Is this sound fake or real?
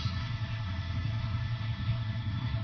fake